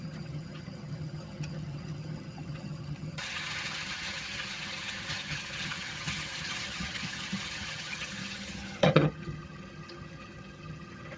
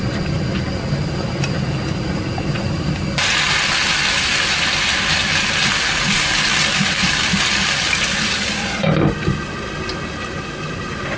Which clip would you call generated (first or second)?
first